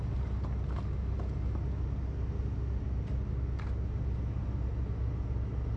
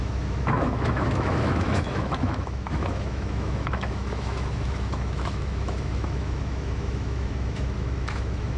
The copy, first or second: second